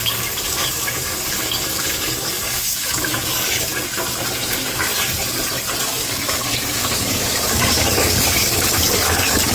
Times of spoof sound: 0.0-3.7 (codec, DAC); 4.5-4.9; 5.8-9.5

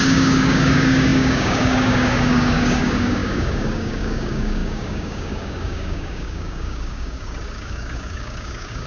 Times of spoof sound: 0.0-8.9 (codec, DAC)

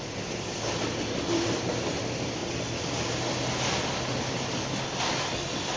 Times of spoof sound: none

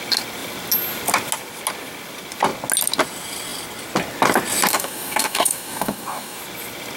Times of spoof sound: 4.7-6.4 (codec, DAC)

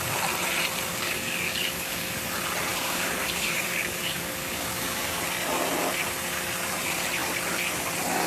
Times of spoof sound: 0.9-2.1 (codec, DAC); 2.7-5.2

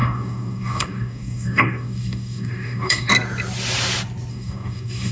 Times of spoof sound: 0.0-3.1 (codec, DAC); 4.3-5.1